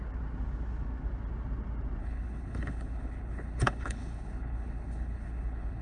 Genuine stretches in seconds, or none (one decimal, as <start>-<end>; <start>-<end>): 0.0-2.0